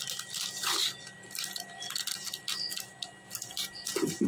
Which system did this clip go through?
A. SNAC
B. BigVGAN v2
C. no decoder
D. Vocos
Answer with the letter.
C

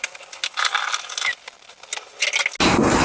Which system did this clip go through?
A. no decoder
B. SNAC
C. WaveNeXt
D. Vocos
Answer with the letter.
A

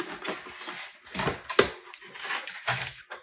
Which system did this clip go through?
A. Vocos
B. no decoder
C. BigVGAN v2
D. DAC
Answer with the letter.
B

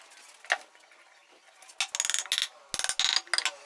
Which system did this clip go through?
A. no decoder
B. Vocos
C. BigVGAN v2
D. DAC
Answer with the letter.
A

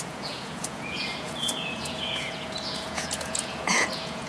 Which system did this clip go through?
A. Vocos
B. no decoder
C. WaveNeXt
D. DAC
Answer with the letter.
A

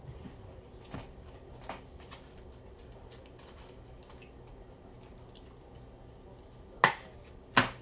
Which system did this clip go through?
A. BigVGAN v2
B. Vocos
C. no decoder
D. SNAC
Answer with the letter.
C